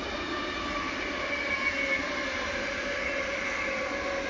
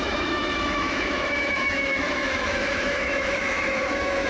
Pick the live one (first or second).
first